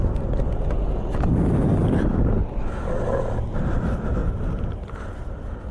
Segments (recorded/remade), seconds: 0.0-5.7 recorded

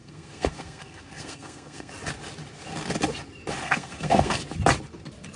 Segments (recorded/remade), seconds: 0.0-1.9 remade; 1.9-3.6 recorded; 3.6-4.4 remade; 4.4-5.4 recorded

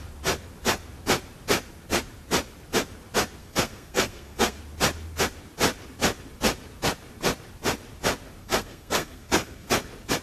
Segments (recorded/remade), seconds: 0.0-3.4 recorded; 3.4-4.6 remade; 4.6-8.4 recorded; 8.4-9.7 remade; 9.7-10.2 recorded

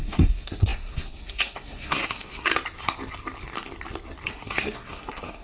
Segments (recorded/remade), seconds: 0.0-2.5 remade; 2.5-4.3 recorded; 4.3-5.4 remade

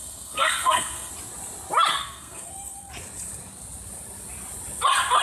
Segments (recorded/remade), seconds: 0.0-1.1 remade; 1.1-1.9 recorded; 1.9-2.9 remade; 2.9-5.2 recorded

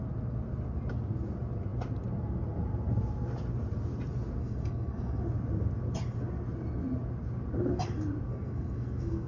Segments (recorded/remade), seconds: 0.0-4.4 recorded; 4.4-5.2 remade; 5.2-8.3 recorded; 8.3-9.3 remade

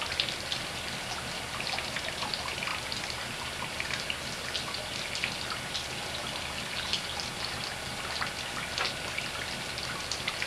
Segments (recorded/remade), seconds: 0.0-10.5 recorded